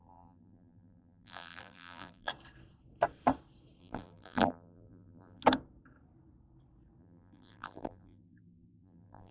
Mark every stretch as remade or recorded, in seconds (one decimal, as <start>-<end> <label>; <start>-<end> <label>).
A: 0.0-2.3 remade; 2.3-3.8 recorded; 3.8-5.4 remade; 5.4-7.0 recorded; 7.0-9.3 remade